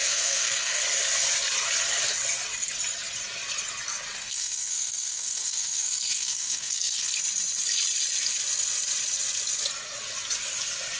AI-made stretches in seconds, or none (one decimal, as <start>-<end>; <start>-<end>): 0.0-0.8; 4.2-7.1